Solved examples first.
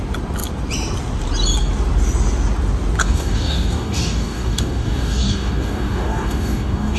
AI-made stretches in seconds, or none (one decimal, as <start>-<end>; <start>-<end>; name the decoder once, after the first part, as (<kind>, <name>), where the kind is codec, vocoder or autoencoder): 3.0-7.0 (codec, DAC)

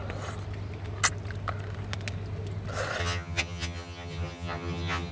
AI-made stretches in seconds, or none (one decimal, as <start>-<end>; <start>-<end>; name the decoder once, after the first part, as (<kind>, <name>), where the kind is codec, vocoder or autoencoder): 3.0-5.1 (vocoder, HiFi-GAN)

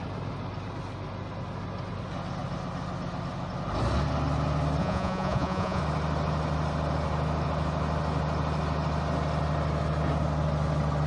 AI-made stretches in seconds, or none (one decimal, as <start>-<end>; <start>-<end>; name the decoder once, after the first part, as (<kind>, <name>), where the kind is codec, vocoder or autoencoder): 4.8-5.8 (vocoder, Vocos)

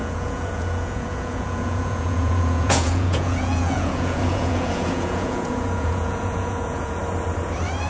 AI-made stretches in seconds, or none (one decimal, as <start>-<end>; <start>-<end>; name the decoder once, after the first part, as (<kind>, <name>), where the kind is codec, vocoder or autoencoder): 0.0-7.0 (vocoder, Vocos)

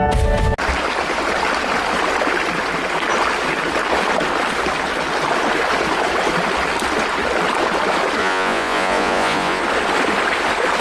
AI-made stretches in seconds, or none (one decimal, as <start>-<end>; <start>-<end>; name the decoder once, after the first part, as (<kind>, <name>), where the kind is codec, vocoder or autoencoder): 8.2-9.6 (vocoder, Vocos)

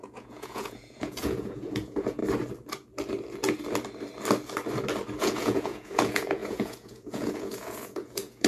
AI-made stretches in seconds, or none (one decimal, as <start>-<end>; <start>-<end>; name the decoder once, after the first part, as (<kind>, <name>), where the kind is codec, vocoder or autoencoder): 0.0-2.2 (vocoder, Vocos); 5.2-8.5

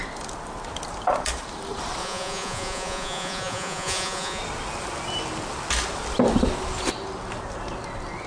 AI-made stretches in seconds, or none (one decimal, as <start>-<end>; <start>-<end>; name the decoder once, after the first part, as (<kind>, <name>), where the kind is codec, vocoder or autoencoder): 2.0-4.4 (vocoder, Vocos)